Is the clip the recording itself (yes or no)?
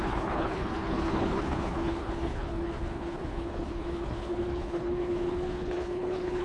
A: no